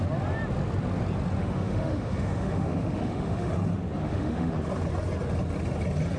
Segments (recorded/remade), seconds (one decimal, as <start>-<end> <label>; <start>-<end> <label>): 0.0-1.4 recorded; 1.4-3.5 remade; 3.5-4.0 recorded; 4.0-4.5 remade; 4.5-6.2 recorded